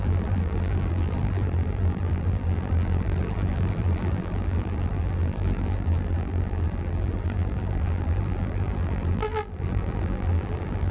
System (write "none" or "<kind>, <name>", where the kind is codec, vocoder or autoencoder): vocoder, BigVGAN v2